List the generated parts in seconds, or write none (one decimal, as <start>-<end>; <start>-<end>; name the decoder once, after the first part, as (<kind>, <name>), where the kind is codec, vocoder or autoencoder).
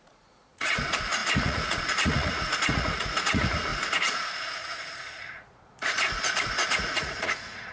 0.0-7.7 (vocoder, Vocos)